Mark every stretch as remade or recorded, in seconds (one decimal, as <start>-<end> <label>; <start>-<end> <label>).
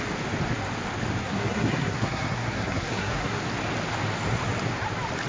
0.0-1.2 recorded; 1.2-3.4 remade; 3.4-5.3 recorded